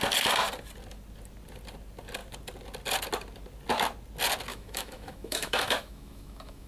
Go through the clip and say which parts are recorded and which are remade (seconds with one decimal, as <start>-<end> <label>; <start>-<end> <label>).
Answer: 0.0-4.5 recorded; 4.5-6.7 remade